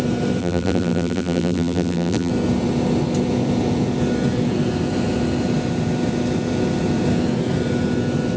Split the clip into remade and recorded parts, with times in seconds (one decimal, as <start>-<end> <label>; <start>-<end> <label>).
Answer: 0.0-0.4 recorded; 0.4-2.3 remade; 2.3-8.4 recorded